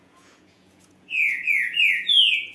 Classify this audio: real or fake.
fake